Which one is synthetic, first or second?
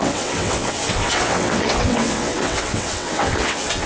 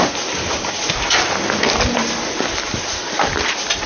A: first